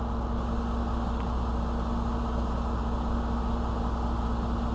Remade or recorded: recorded